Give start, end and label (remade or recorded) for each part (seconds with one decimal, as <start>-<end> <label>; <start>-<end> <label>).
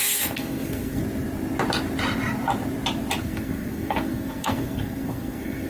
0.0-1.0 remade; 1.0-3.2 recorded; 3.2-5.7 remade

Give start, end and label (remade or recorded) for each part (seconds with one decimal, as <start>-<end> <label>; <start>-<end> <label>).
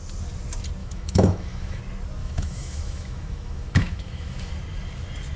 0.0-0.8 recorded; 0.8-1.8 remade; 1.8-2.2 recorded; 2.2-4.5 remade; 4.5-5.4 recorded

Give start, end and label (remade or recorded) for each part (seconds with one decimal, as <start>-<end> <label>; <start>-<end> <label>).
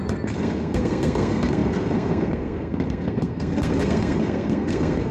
0.0-5.1 remade